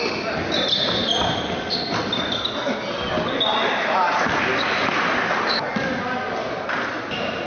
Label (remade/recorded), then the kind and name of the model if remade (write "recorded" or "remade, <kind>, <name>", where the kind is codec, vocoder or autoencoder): recorded